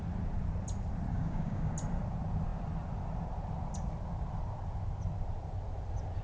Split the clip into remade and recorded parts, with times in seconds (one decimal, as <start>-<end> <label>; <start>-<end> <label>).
0.0-1.1 recorded; 1.1-1.7 remade; 1.7-6.2 recorded